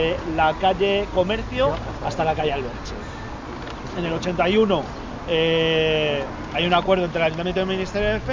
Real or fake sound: real